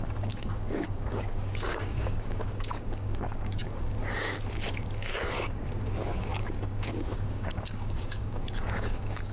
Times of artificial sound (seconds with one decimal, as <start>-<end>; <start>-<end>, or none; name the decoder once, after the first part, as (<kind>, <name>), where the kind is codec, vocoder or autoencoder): 0.0-9.3 (codec, DAC)